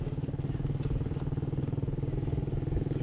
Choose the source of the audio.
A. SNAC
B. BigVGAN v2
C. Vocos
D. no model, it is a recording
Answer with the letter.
D